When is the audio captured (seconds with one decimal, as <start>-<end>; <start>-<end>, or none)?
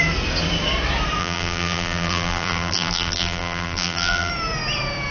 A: 0.0-1.2; 4.3-5.1